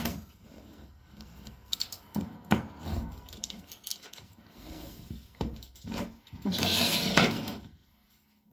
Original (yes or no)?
no